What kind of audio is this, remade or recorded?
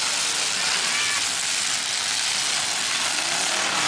recorded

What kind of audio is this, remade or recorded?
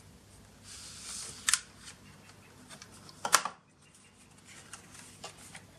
recorded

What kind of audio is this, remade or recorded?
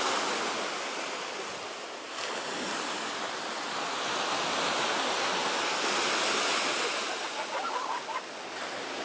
recorded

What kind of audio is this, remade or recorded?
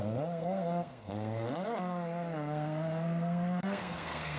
remade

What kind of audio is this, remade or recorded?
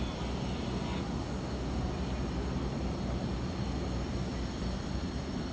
recorded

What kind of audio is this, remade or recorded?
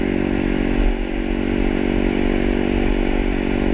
recorded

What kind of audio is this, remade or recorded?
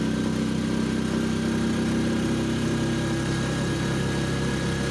recorded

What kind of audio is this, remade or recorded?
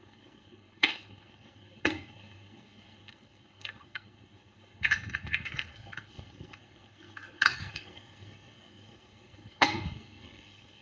remade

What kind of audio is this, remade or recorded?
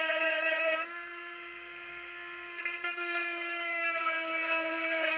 remade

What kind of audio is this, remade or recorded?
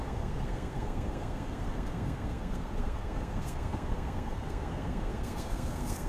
remade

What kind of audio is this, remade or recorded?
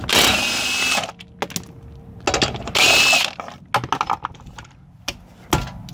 recorded